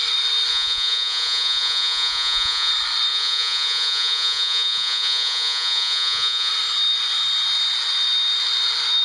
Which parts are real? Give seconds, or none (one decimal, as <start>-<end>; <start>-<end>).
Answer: 0.0-0.5; 2.7-3.1; 6.5-9.0

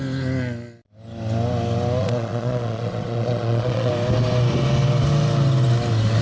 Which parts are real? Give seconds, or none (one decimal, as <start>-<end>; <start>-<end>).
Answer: 0.0-2.0; 3.9-6.2

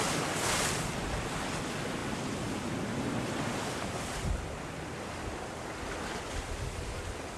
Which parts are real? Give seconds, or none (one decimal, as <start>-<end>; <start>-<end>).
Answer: 0.0-7.4

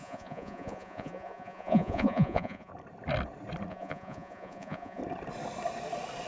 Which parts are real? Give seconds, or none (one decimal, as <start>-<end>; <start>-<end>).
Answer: 2.7-3.7; 5.0-6.3

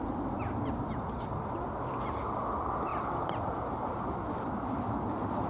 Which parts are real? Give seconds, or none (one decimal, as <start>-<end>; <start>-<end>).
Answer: 0.0-5.5